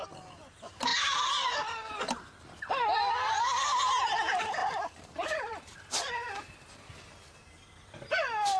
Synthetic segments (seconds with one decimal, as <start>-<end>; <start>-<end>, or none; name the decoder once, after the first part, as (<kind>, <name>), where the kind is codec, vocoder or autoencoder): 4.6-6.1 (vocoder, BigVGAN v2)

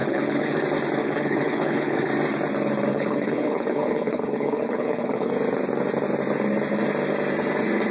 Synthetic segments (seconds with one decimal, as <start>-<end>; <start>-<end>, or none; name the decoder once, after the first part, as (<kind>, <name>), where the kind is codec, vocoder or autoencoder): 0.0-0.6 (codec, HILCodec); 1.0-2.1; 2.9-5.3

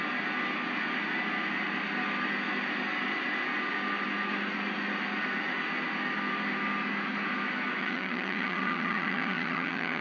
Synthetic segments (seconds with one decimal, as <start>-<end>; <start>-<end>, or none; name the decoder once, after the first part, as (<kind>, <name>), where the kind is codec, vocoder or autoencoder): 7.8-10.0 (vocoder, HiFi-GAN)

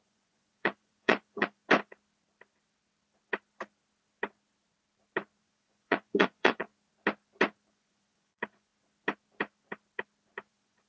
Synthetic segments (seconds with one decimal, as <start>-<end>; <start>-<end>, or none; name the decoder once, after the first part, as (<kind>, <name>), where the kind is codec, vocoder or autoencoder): 0.0-1.6 (vocoder, Vocos); 5.4-6.7; 7.7-8.7; 10.5-10.9